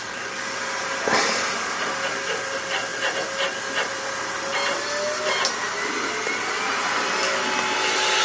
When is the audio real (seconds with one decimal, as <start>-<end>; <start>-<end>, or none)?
0.0-8.2